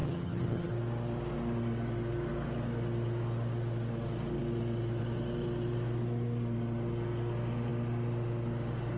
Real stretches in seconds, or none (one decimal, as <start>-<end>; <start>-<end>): 0.7-9.0